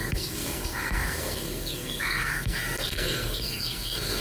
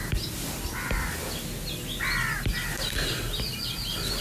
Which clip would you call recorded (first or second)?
second